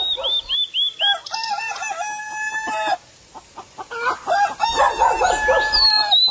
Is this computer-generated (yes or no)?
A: no